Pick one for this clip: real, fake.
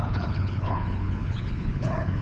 fake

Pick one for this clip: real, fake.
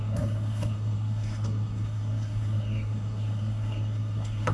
fake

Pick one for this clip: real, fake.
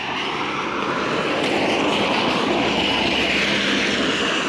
real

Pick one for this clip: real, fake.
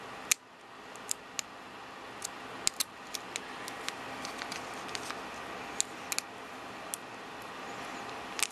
real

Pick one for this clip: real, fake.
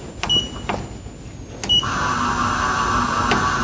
real